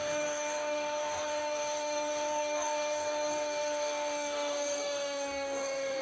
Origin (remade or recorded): remade